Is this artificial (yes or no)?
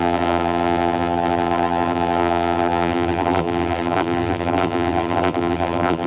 yes